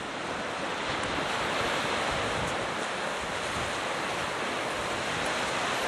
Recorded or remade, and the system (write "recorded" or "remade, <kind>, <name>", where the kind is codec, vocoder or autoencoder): recorded